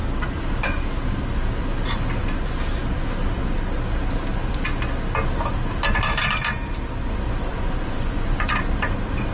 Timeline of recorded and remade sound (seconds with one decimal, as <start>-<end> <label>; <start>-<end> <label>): 0.0-7.5 recorded; 7.5-8.5 remade; 8.5-9.3 recorded